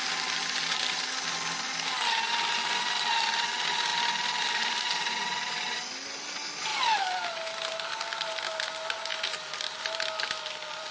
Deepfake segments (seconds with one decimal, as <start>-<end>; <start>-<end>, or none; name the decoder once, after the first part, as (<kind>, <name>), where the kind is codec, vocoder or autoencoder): 3.9-6.2 (vocoder, BigVGAN v2); 6.7-7.3